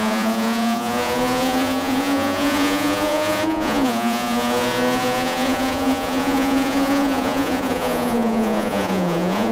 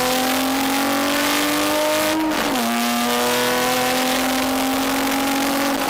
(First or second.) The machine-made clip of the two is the first